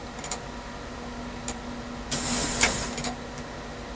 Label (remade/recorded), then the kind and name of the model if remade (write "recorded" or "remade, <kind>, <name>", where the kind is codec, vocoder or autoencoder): recorded